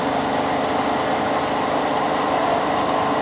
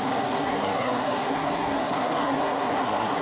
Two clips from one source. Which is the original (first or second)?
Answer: first